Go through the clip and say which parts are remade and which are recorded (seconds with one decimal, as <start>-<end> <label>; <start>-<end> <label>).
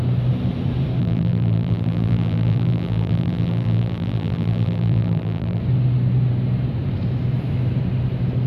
0.0-1.0 recorded; 1.0-5.6 remade; 5.6-8.5 recorded